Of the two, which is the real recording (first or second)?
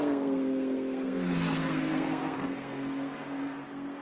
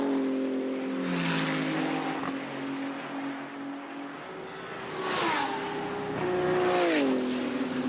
second